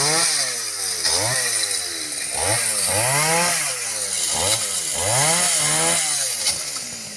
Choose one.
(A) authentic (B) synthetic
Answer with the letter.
A